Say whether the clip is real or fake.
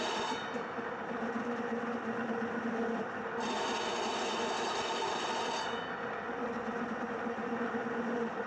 fake